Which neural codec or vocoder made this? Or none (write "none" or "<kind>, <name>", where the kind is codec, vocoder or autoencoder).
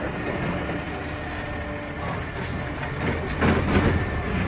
none